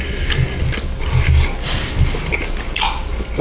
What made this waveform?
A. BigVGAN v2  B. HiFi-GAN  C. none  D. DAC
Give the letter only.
C